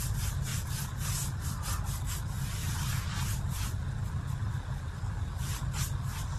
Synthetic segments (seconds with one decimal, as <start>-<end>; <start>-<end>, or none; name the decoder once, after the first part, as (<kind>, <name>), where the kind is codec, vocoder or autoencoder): none